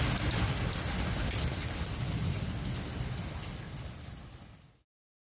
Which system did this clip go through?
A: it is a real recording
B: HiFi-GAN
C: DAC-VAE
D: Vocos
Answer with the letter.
A